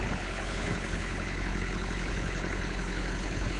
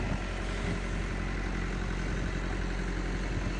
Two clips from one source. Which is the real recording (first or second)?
second